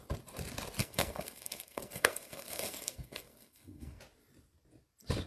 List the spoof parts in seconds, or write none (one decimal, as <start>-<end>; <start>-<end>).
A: 0.8-4.0